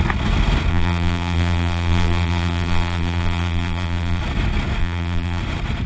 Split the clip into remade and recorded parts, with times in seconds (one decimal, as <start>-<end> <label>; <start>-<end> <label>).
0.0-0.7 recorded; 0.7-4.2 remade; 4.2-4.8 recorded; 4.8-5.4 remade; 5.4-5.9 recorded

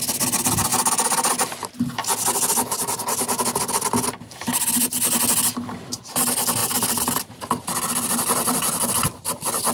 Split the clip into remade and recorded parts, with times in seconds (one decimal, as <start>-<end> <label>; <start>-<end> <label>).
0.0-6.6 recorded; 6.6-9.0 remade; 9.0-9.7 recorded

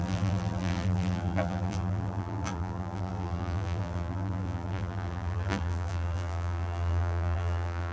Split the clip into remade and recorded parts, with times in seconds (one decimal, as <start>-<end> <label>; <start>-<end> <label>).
0.0-7.9 remade